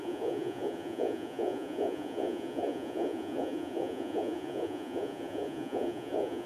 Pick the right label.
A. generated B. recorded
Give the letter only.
A